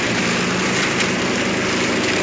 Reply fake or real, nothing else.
real